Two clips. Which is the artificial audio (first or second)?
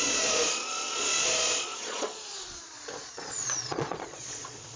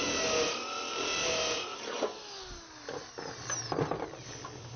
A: first